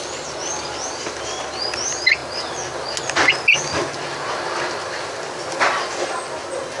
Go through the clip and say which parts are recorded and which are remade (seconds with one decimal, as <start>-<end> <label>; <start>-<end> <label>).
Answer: 0.0-6.8 recorded